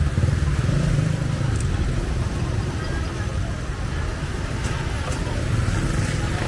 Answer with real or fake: real